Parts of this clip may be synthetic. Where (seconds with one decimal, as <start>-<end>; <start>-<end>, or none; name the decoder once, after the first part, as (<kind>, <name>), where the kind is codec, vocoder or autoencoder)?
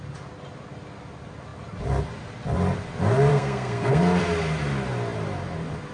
3.3-4.0 (codec, SNAC)